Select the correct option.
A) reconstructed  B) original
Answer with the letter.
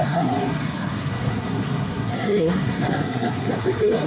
A